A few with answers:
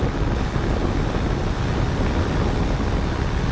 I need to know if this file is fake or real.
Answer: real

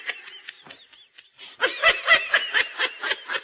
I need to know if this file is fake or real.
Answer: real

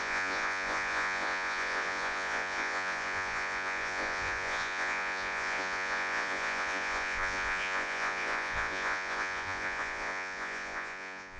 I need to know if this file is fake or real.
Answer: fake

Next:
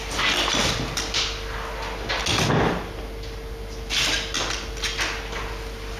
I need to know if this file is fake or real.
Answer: real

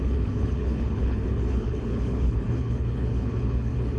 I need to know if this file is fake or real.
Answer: fake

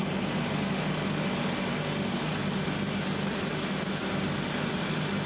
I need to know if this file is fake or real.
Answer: real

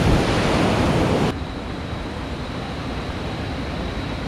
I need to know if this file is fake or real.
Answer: real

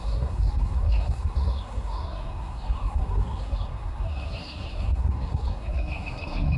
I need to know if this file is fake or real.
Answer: fake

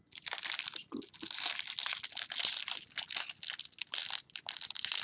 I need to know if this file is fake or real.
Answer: real